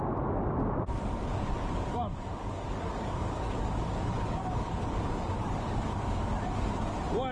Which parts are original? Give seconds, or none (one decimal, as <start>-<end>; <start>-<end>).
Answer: 0.0-1.9; 6.3-7.3

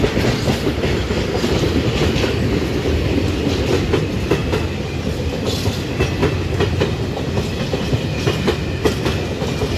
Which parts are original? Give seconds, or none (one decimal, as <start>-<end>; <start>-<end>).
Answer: 4.4-5.0

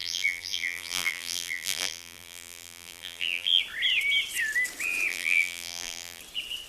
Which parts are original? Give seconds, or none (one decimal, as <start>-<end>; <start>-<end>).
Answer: 3.6-5.1; 6.2-6.7

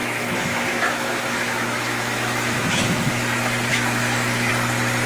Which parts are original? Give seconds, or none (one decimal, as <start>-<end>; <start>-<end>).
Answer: 3.1-3.7; 4.5-5.1

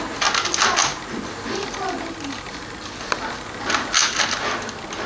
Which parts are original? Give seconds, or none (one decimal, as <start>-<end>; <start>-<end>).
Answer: 0.0-5.1

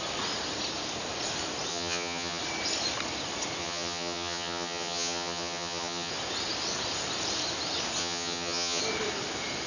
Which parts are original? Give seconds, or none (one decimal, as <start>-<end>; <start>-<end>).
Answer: 0.0-1.7; 2.4-3.6; 6.1-8.0; 8.8-9.7

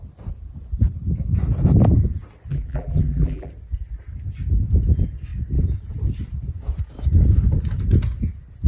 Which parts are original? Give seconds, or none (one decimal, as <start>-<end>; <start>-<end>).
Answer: 0.0-2.5; 3.5-8.7